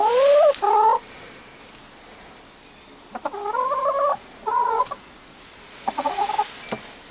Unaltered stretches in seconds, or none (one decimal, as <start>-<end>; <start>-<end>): 0.0-4.1; 6.3-7.1